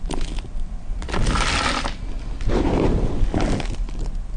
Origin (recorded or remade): recorded